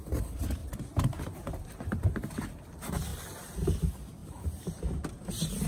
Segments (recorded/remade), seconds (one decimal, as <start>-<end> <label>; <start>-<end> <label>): 0.0-0.6 remade; 0.6-1.2 recorded; 1.2-3.1 remade; 3.1-3.8 recorded; 3.8-5.7 remade

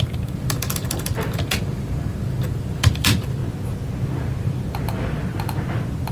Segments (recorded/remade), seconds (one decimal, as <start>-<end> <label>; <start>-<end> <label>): 0.0-3.4 remade; 3.4-6.1 recorded

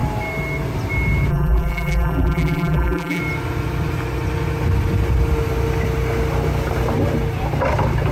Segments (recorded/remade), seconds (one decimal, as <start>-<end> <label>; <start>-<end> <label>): 0.0-1.3 recorded; 1.3-3.2 remade; 3.2-8.1 recorded